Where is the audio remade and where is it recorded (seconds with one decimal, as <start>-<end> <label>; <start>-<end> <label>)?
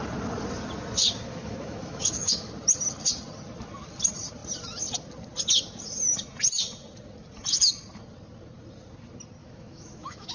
0.0-1.3 recorded; 1.3-2.5 remade; 2.5-9.4 recorded; 9.4-10.3 remade